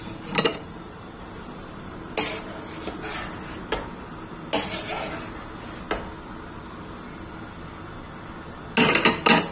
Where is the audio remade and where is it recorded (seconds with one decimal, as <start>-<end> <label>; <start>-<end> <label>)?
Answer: 0.0-0.5 recorded; 0.5-1.2 remade; 1.2-9.5 recorded